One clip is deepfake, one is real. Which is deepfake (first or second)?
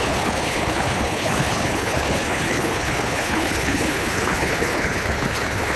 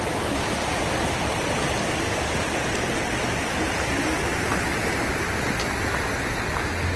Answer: first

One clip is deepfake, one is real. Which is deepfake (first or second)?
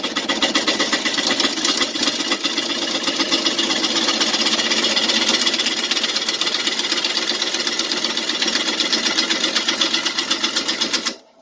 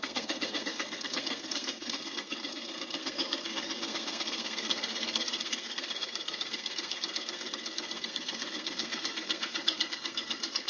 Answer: second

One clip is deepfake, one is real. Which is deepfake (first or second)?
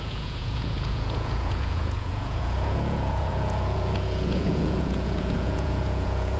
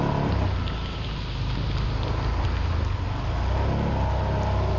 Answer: first